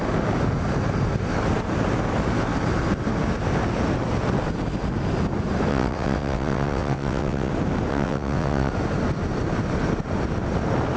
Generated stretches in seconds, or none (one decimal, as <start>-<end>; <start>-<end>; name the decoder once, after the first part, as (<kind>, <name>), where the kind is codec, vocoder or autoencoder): 5.7-7.5 (vocoder, WaveNeXt); 7.9-8.7